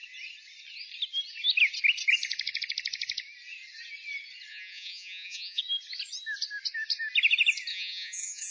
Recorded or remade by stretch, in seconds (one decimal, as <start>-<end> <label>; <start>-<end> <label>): 0.0-4.5 recorded; 4.5-5.6 remade; 5.6-7.7 recorded; 7.7-8.5 remade